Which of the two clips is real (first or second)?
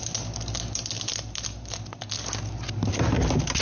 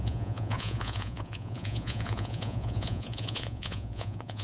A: first